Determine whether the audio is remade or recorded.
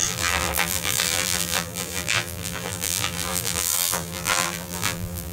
remade